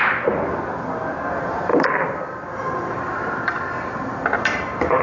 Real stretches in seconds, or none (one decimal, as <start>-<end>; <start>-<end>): 0.0-1.7